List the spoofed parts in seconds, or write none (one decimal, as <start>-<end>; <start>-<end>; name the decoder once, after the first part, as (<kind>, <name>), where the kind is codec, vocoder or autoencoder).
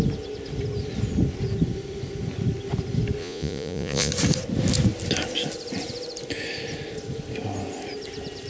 3.2-4.1 (vocoder, Vocos)